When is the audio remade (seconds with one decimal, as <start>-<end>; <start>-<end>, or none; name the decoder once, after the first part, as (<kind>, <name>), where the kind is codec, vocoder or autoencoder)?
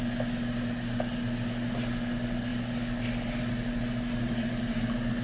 none